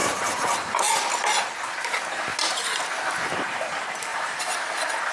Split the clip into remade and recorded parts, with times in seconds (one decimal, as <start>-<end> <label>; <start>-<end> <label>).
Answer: 0.0-0.8 remade; 0.8-4.1 recorded; 4.1-4.6 remade; 4.6-5.1 recorded

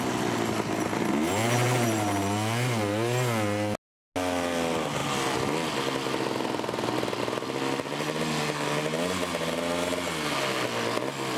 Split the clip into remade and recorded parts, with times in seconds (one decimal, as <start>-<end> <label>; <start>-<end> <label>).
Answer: 0.0-11.4 recorded

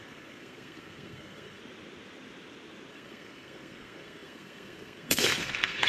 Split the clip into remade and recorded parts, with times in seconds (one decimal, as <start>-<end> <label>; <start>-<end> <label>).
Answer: 0.0-1.6 remade; 1.6-2.9 recorded; 2.9-5.9 remade

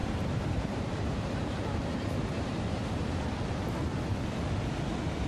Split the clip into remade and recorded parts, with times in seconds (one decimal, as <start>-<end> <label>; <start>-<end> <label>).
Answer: 0.0-3.2 remade; 3.2-5.3 recorded

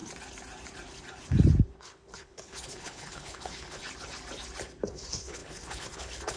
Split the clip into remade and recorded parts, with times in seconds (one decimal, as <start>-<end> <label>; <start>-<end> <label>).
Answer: 0.0-1.7 recorded; 1.7-3.8 remade; 3.8-4.9 recorded; 4.9-6.4 remade

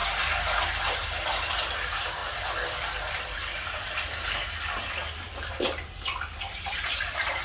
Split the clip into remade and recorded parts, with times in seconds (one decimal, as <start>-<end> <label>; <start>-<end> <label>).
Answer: 0.0-1.7 recorded; 1.7-2.2 remade; 2.2-6.4 recorded; 6.4-7.4 remade